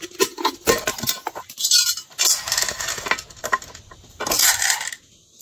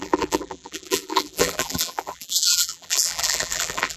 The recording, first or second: first